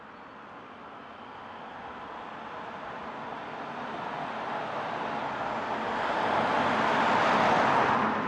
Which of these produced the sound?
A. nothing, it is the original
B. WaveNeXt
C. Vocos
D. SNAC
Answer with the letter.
A